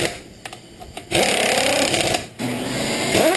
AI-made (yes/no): no